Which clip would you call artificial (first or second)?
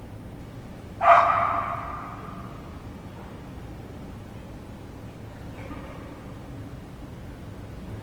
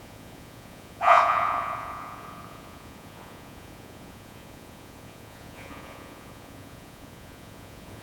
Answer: second